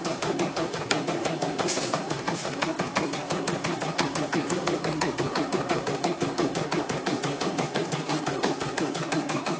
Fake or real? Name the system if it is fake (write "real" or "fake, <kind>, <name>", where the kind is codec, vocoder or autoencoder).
fake, codec, SNAC